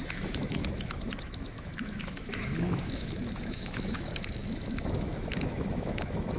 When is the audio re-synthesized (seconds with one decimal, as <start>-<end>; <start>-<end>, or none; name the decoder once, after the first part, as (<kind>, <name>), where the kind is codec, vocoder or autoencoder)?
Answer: 0.0-6.4 (autoencoder, DAC-VAE)